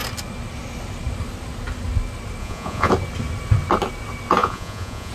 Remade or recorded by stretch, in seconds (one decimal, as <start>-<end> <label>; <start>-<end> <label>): 0.0-2.4 recorded; 2.4-2.9 remade; 2.9-4.4 recorded; 4.4-5.1 remade